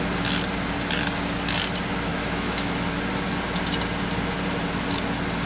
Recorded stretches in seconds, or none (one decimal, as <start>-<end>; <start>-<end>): 0.0-2.1; 2.7-5.5